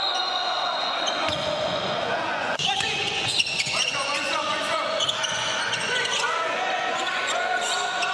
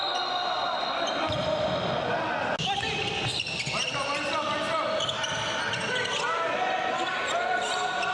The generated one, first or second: first